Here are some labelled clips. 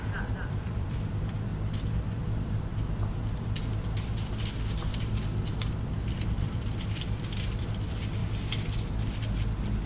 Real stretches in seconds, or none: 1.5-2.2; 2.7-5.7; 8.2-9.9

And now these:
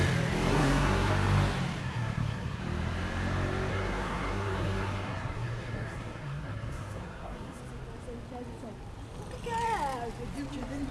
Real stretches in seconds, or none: 0.0-0.5; 1.1-1.8; 2.6-3.7; 7.6-10.9

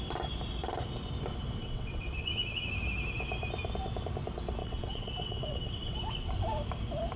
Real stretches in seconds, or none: 0.0-1.6; 2.7-4.6; 6.3-7.2

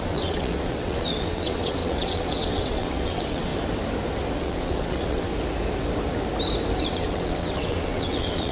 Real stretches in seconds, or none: 3.5-4.4; 5.3-6.8